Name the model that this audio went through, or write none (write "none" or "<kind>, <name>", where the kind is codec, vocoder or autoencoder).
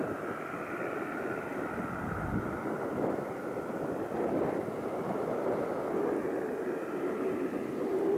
none